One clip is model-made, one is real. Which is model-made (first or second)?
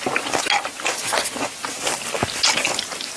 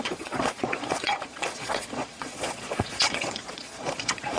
second